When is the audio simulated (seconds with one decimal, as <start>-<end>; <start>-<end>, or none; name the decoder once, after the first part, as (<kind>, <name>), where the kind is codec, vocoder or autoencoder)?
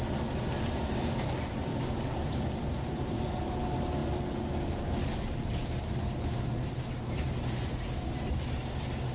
none